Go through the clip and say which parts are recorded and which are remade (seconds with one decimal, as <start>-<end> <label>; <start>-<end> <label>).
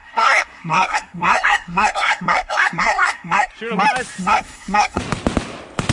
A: 0.0-3.5 remade; 3.5-4.2 recorded; 4.2-5.0 remade; 5.0-5.9 recorded